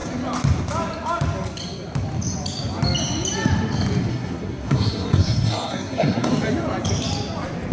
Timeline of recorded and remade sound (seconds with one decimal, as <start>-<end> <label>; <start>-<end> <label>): 0.0-4.1 recorded; 4.1-6.3 remade; 6.3-7.7 recorded